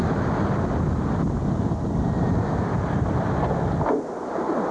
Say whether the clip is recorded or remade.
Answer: recorded